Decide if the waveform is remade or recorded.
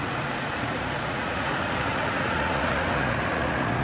remade